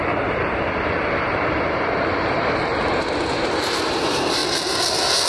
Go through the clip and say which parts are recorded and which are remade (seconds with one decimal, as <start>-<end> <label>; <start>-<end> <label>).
0.0-4.4 remade; 4.4-5.3 recorded